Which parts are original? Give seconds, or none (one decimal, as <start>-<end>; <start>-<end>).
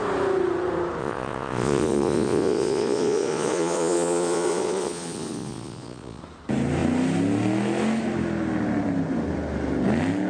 0.0-1.0; 6.2-10.3